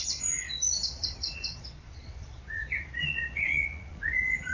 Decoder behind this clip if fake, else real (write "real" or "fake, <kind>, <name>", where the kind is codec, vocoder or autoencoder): fake, vocoder, Vocos